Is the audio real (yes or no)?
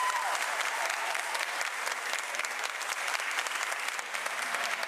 yes